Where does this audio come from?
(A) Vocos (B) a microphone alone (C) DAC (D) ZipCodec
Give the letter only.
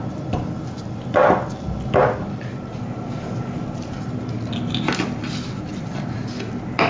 B